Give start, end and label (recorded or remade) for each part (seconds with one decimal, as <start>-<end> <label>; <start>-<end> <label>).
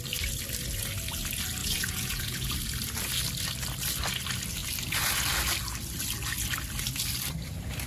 0.0-1.6 recorded; 1.6-2.5 remade; 2.5-7.9 recorded